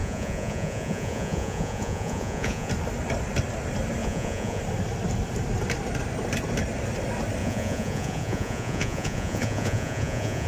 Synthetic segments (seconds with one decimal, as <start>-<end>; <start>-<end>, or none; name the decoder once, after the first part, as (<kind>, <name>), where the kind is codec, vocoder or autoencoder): 0.0-2.7 (vocoder, Vocos); 4.0-4.6; 7.4-10.5